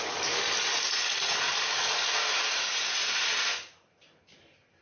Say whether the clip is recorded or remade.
recorded